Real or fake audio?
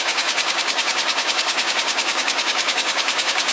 fake